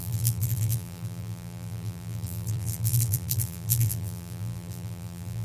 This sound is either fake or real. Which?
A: fake